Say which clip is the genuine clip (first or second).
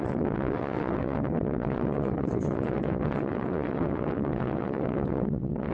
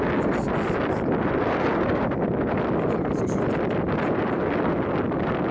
second